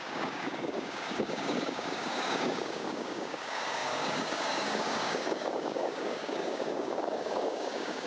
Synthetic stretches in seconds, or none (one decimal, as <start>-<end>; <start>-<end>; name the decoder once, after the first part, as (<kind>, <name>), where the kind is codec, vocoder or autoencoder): 0.0-8.1 (codec, DAC)